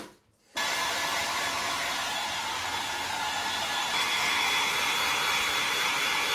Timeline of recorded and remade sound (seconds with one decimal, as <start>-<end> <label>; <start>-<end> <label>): 0.0-1.2 recorded; 1.2-2.6 remade; 2.6-6.3 recorded